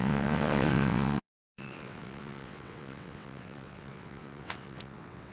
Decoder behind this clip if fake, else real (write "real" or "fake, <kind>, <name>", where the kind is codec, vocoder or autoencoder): fake, vocoder, WaveNeXt